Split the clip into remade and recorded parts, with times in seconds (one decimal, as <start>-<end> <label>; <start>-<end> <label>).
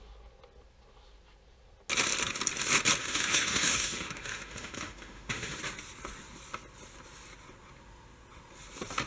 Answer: 0.0-3.0 recorded; 3.0-5.6 remade; 5.6-9.1 recorded